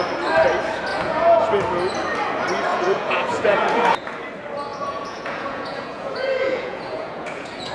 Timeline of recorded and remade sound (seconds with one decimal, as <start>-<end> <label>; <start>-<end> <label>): 0.0-0.9 recorded; 0.9-1.5 remade; 1.5-2.7 recorded; 2.7-4.1 remade; 4.1-4.7 recorded; 4.7-7.7 remade